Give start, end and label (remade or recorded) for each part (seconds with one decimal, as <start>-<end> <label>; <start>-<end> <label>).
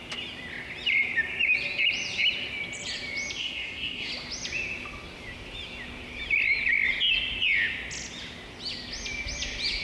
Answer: 0.0-3.4 recorded; 3.4-4.1 remade; 4.1-9.8 recorded